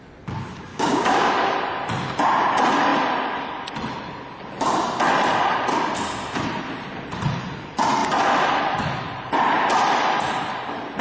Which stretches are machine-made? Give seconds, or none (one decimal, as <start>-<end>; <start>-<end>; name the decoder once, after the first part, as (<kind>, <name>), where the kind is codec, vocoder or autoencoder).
0.7-1.3 (codec, DAC)